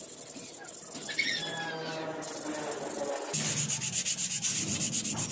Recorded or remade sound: recorded